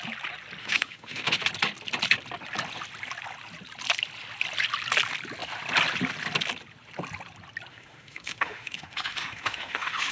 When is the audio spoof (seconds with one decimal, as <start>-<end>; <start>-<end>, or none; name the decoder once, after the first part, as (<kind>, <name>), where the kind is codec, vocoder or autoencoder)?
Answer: 0.6-1.4 (autoencoder, DAC-VAE); 7.7-10.1